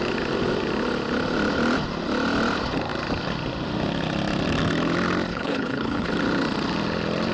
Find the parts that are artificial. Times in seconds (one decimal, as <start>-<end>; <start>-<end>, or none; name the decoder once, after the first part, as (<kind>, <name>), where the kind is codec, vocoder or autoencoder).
5.3-6.1 (codec, HILCodec)